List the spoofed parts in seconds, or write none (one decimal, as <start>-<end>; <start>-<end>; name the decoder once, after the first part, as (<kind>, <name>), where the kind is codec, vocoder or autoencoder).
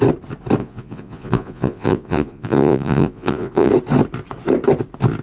0.6-3.7 (vocoder, Vocos)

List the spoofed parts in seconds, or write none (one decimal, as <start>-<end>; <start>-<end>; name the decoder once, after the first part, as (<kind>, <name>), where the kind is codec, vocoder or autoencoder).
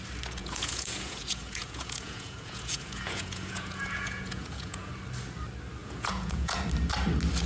0.4-4.9 (vocoder, Vocos); 5.8-6.6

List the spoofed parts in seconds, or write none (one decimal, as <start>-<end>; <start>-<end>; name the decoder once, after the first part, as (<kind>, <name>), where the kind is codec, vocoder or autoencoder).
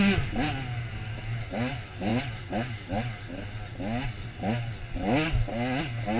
none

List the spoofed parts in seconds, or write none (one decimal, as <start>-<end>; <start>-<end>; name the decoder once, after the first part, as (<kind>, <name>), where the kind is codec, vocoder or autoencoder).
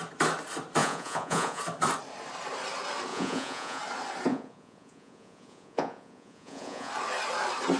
0.8-1.6 (vocoder, Vocos); 3.1-3.8; 4.3-6.9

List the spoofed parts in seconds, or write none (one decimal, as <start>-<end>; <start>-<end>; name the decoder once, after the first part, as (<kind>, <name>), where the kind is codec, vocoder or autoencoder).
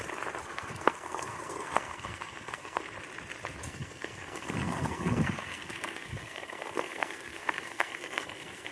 0.4-2.8 (codec, SNAC); 3.6-8.7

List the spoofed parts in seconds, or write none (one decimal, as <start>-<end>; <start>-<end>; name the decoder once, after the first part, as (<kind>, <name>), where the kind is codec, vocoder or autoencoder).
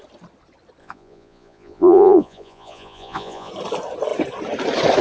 0.8-3.5 (vocoder, Vocos)